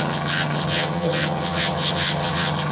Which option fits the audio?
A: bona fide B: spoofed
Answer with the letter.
B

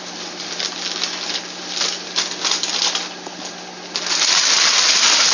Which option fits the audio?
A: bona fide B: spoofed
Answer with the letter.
A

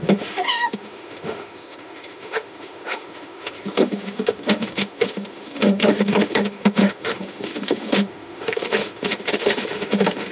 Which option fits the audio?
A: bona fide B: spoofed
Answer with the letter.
B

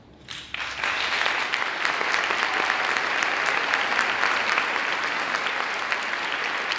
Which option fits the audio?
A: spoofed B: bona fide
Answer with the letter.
B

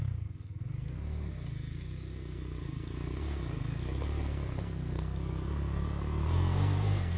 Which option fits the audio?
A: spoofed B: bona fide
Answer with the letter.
A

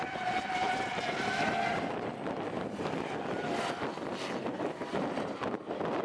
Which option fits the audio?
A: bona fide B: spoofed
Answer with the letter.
A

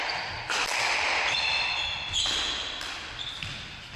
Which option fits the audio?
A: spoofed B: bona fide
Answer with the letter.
B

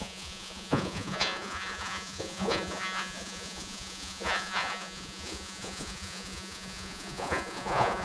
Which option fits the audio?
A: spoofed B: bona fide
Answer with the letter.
A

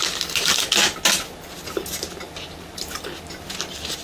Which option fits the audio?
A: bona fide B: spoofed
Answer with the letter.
A